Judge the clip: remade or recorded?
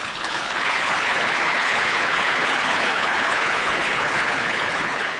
remade